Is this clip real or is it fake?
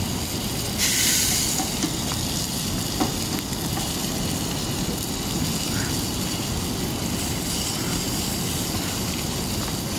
real